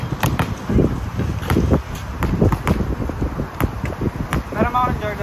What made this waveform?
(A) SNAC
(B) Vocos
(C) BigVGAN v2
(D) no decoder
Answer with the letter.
D